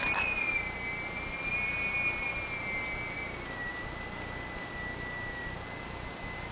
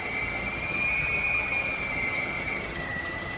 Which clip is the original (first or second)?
first